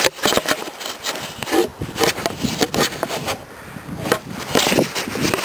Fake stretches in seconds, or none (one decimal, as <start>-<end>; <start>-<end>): none